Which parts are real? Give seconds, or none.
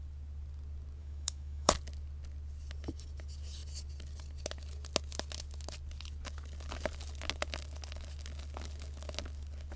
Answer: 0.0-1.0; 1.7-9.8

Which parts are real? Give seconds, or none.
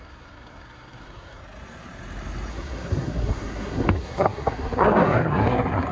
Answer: 1.4-2.5